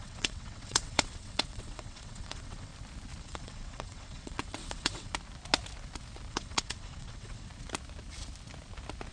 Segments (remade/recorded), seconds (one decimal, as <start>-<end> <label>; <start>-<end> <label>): 0.0-2.7 remade; 2.7-3.2 recorded; 3.2-5.1 remade; 5.1-6.3 recorded; 6.3-7.5 remade; 7.5-9.1 recorded